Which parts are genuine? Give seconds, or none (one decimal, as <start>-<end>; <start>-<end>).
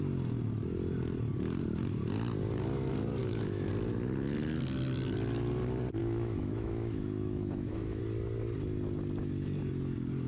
0.0-3.2; 3.7-6.0; 8.0-10.3